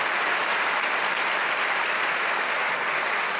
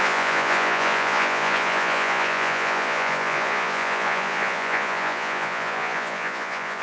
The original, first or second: first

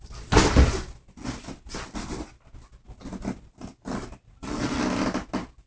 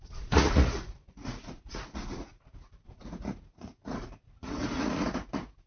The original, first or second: first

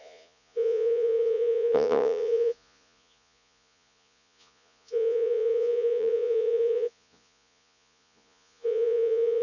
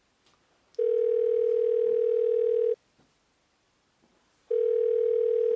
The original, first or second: second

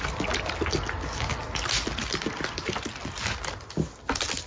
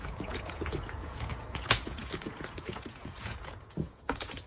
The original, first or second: first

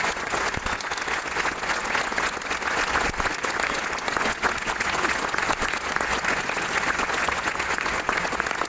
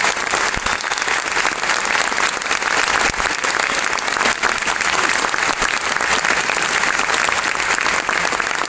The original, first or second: second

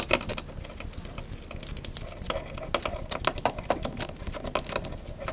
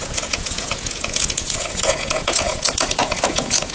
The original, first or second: first